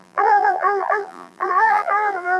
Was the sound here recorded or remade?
remade